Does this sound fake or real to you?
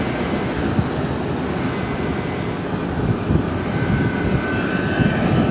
real